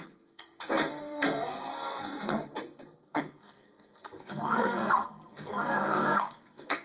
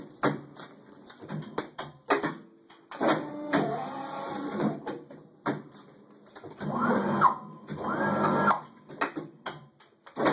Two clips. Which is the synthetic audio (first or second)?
first